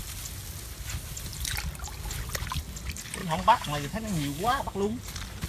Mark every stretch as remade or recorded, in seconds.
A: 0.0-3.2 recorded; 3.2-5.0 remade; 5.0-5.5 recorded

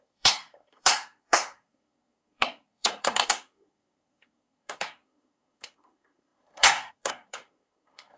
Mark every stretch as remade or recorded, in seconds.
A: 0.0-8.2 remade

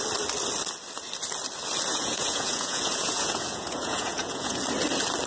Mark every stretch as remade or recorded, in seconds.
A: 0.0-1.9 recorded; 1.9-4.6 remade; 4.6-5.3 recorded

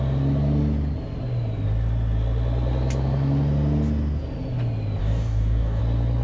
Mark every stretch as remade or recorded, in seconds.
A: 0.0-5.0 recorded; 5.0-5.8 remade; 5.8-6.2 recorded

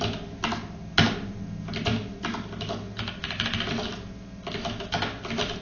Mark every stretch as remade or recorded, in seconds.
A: 0.0-5.6 recorded